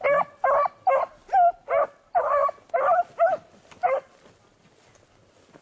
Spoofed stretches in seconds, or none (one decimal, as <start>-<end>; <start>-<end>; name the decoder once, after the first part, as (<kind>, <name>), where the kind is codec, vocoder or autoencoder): none

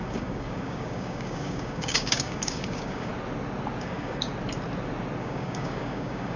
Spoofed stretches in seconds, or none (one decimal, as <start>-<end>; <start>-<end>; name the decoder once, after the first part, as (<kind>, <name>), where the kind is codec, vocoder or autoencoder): 0.0-3.1 (codec, DAC); 3.8-4.3; 5.2-6.4

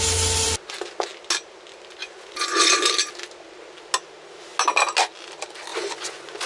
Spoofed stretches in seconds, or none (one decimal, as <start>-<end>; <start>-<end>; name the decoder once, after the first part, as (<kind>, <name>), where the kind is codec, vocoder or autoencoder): 2.0-2.9 (vocoder, Vocos); 5.7-6.5

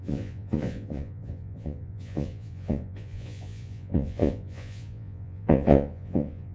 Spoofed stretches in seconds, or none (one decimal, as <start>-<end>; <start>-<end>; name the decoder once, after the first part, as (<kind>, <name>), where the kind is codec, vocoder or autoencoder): 0.0-6.5 (vocoder, Vocos)

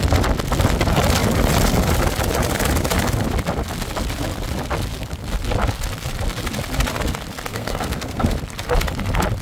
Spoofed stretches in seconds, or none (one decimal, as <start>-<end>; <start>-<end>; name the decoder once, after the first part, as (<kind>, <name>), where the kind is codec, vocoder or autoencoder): 7.5-8.3 (codec, SNAC)

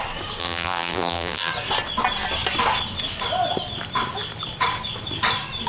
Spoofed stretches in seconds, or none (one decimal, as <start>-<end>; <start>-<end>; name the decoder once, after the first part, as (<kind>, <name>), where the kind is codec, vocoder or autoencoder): 0.4-1.5 (vocoder, BigVGAN v2)

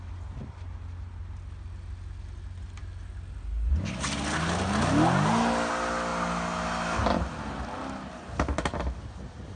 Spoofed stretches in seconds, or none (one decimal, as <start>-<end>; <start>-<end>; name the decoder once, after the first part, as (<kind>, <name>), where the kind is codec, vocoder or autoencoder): none

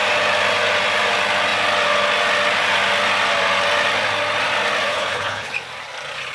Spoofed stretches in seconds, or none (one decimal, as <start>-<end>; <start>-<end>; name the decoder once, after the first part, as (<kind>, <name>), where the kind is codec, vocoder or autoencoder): 4.9-5.5 (codec, HILCodec)